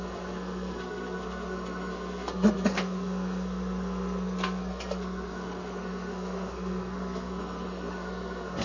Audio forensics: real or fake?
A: fake